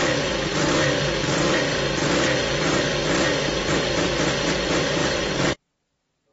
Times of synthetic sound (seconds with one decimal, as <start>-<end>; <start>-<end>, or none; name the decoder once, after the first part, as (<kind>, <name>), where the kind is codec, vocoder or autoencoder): 5.0-5.5 (vocoder, BigVGAN v2)